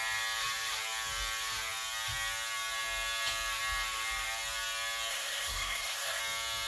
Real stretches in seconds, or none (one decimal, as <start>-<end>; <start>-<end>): 0.0-5.1; 6.2-6.7